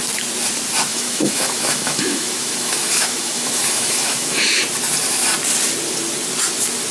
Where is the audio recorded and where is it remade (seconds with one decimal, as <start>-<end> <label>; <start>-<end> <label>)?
0.0-0.9 recorded; 0.9-4.6 remade; 4.6-6.9 recorded